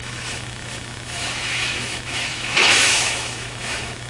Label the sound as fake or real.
fake